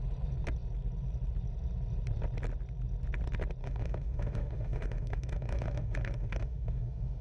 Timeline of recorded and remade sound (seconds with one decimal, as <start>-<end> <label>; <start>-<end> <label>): 0.0-3.6 recorded; 3.6-7.2 remade